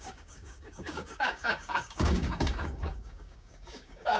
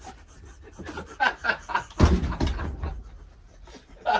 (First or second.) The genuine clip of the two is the second